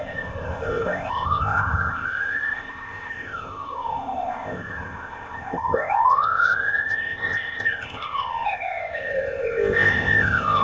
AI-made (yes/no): yes